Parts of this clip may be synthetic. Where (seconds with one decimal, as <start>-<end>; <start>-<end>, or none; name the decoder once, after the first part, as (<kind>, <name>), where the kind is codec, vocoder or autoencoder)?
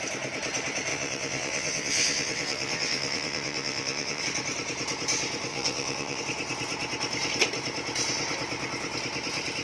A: 0.9-4.2 (vocoder, WaveNeXt); 5.5-6.2